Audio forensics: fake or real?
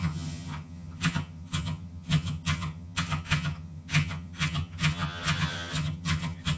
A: fake